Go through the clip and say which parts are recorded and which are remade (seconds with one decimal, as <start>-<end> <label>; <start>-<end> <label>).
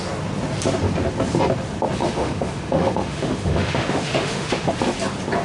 0.0-2.0 recorded; 2.0-4.7 remade; 4.7-5.4 recorded